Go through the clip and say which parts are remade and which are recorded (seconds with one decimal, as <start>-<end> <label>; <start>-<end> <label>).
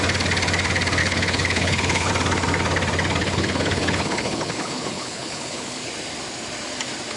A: 0.0-1.0 recorded; 1.0-2.1 remade; 2.1-3.2 recorded; 3.2-5.9 remade; 5.9-7.2 recorded